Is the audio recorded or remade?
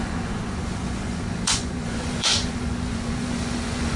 remade